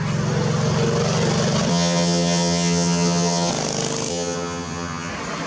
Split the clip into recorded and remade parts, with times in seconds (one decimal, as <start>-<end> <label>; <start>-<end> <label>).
0.0-1.7 recorded; 1.7-3.5 remade; 3.5-4.1 recorded; 4.1-5.1 remade; 5.1-5.5 recorded